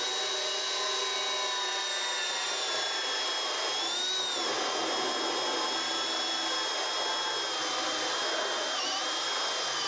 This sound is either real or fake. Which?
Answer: real